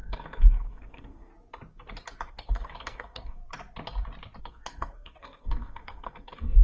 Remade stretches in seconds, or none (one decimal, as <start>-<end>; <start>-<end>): 0.0-1.3; 2.3-3.4; 4.4-6.6